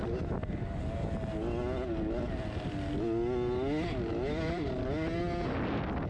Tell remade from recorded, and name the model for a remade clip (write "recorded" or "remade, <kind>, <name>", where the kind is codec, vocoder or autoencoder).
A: recorded